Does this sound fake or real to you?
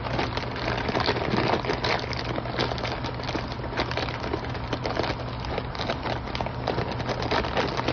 real